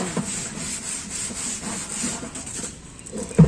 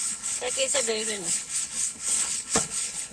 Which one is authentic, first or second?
first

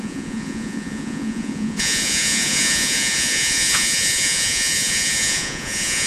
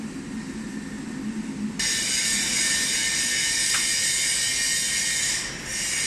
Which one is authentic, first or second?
second